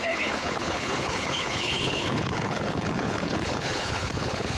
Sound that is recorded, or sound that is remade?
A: remade